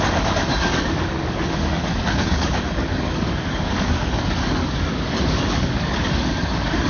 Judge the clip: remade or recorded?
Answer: remade